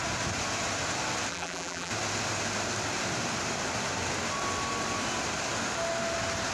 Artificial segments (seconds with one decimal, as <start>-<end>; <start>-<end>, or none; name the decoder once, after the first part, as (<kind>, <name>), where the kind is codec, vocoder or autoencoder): 1.3-1.9 (vocoder, BigVGAN v2)

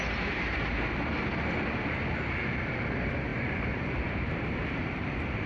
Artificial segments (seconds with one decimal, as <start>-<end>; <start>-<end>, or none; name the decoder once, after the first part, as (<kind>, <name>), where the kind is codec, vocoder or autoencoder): 0.0-5.5 (vocoder, BigVGAN v2)

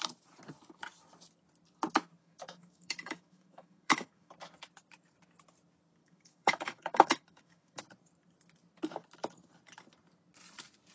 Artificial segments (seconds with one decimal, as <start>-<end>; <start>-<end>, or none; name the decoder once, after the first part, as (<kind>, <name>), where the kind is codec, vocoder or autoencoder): 2.2-4.3 (autoencoder, DAC-VAE); 6.0-7.8

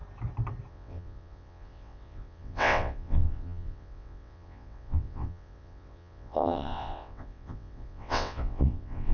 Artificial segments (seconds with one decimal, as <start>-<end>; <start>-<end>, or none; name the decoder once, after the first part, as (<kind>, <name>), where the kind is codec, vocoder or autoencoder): 0.7-9.1 (vocoder, WaveNeXt)

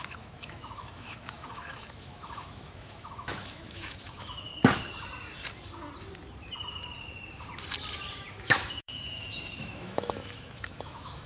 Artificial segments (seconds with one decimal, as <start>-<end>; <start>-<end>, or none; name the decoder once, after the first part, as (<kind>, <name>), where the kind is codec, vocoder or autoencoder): 0.0-4.5 (autoencoder, DAC-VAE); 8.3-11.3

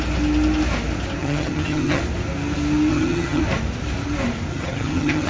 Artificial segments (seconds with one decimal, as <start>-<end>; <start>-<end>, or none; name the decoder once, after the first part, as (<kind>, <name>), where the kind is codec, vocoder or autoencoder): 1.2-2.0 (vocoder, HiFi-GAN); 2.9-3.4; 4.5-5.3

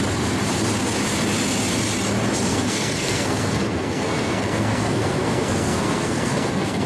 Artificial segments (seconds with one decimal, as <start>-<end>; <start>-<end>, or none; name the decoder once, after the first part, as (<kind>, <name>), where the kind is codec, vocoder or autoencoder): 2.5-6.9 (codec, SNAC)